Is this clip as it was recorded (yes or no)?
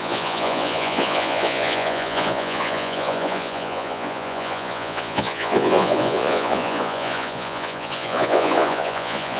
no